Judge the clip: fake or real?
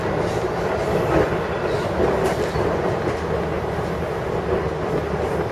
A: real